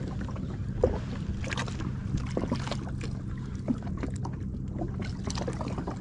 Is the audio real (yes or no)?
yes